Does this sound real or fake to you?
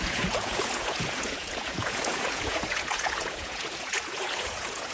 fake